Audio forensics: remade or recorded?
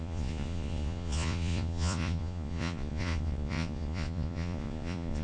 remade